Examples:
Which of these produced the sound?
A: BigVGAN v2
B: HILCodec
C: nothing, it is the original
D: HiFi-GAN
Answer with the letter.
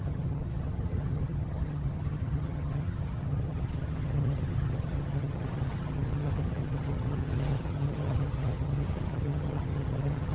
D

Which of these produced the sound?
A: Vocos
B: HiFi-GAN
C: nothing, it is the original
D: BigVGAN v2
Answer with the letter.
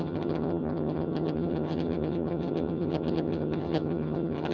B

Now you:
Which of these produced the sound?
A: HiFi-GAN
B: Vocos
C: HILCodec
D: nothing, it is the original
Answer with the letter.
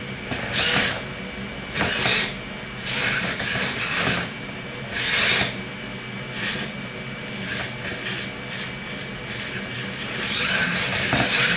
D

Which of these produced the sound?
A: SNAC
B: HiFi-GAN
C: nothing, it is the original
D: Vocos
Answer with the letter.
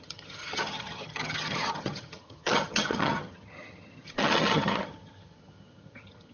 B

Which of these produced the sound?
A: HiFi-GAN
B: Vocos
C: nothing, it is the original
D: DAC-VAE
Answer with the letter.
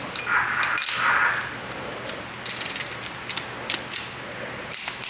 C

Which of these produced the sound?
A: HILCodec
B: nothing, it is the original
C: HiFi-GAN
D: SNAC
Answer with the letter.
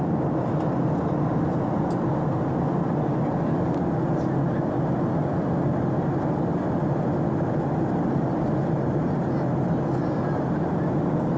B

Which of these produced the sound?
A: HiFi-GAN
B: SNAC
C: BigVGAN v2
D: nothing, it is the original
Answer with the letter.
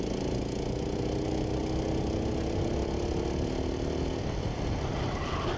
D